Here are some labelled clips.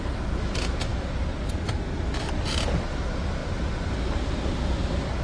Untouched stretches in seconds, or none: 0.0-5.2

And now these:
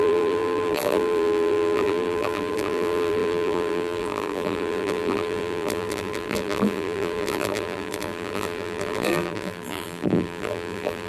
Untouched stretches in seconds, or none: none

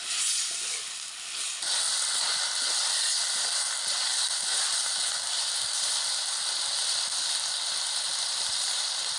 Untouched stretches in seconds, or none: 0.0-1.9; 3.2-4.1

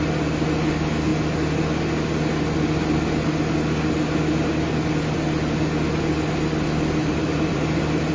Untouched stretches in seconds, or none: 0.0-7.0

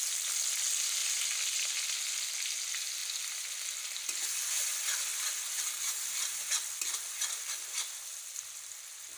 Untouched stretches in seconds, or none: 0.0-5.1; 8.5-9.2

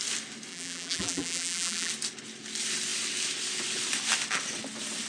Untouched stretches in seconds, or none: 0.0-0.5; 1.9-5.1

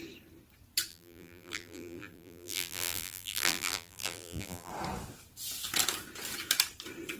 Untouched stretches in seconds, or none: 0.0-0.9; 4.7-7.2